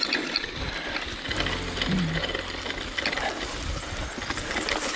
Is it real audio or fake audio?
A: real